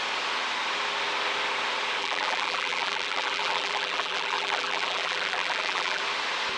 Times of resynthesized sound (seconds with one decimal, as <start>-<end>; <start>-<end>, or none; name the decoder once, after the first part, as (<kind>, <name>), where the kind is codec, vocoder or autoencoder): 2.0-6.0 (vocoder, BigVGAN v2)